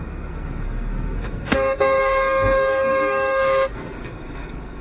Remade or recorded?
remade